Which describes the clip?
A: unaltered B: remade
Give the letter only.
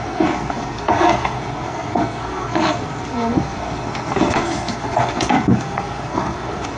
B